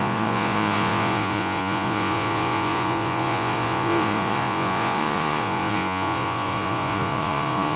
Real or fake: fake